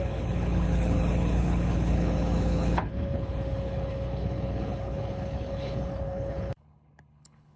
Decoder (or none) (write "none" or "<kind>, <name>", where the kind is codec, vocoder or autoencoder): codec, HILCodec